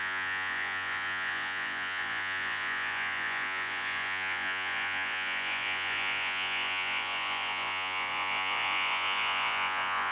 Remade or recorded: remade